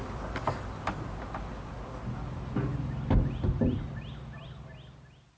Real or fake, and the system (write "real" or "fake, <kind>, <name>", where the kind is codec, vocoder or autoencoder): real